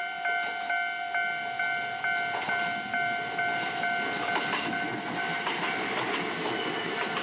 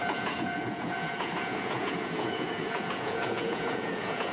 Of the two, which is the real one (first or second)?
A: first